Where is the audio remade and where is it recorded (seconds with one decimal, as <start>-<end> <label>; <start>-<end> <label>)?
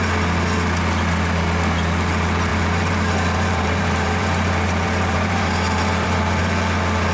0.0-2.5 recorded; 2.5-6.4 remade; 6.4-7.1 recorded